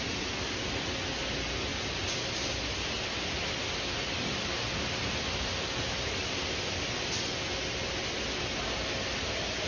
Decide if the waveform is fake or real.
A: real